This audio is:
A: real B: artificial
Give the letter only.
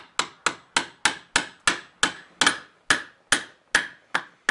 A